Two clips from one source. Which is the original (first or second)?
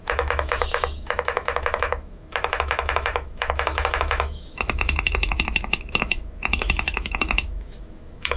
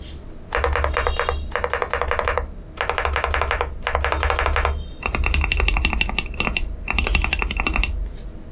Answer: second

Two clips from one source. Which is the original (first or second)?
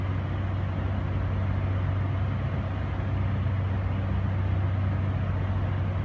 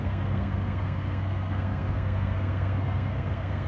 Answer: first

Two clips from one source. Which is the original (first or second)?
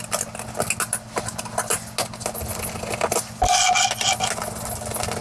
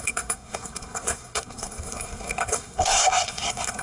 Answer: first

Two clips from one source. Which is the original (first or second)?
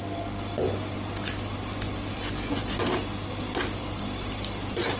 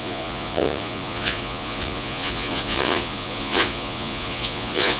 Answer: first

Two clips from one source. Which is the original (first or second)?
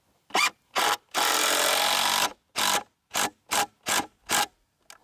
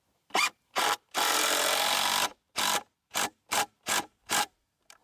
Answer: first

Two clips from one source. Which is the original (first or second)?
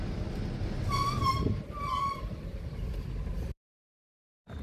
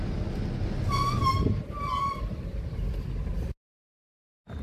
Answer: second